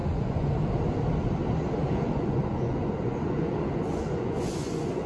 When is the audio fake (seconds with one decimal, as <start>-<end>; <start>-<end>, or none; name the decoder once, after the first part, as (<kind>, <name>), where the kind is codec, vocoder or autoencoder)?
0.0-0.5 (vocoder, Vocos); 1.8-5.1